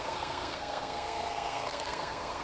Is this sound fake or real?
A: fake